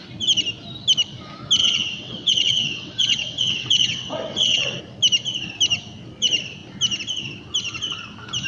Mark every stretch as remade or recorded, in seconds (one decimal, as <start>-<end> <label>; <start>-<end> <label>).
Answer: 0.0-1.6 recorded; 1.6-4.8 remade; 4.8-8.5 recorded